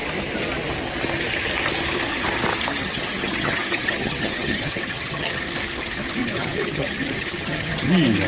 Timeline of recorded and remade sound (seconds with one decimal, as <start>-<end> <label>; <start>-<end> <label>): 0.0-2.8 recorded; 2.8-5.4 remade; 5.4-6.2 recorded; 6.2-7.9 remade; 7.9-8.3 recorded